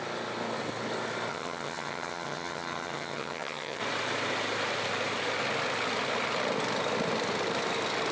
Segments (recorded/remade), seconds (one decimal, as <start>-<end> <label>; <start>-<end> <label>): 0.0-1.3 recorded; 1.3-3.8 remade; 3.8-8.1 recorded